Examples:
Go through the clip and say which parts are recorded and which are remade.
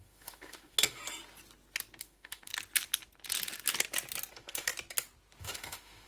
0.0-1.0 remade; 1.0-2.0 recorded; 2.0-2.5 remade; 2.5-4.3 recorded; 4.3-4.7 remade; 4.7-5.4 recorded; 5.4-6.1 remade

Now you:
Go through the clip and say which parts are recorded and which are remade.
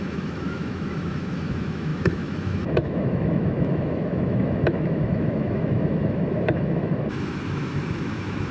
0.0-8.5 remade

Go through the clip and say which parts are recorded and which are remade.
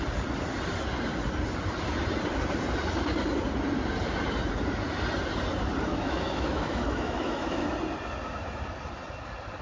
0.0-5.9 recorded; 5.9-7.7 remade; 7.7-9.6 recorded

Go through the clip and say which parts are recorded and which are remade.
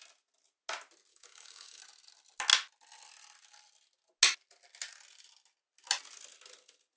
0.0-1.1 recorded; 1.1-1.8 remade; 1.8-7.0 recorded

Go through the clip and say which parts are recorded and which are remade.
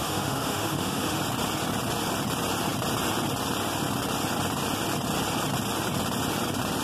0.0-1.2 remade; 1.2-6.8 recorded